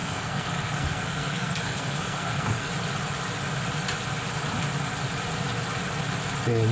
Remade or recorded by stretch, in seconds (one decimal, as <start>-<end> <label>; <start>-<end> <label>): 0.0-2.7 remade; 2.7-6.7 recorded